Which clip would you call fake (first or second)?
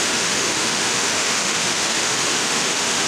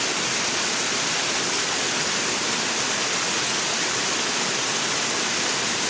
first